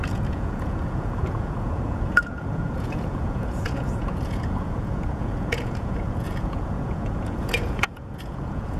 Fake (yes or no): yes